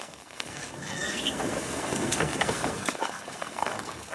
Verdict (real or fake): fake